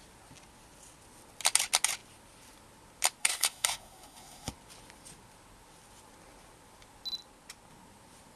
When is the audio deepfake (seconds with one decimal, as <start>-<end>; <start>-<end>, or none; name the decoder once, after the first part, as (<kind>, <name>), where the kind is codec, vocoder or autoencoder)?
3.2-4.5 (codec, SNAC)